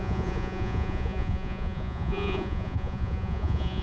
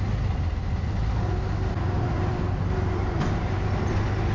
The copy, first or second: first